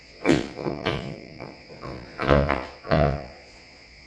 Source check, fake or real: fake